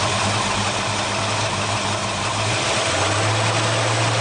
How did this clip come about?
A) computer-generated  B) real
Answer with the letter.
B